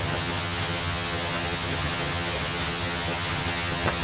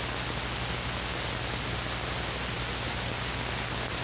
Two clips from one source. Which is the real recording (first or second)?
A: second